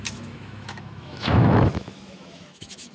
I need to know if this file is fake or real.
fake